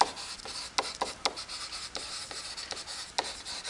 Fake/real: real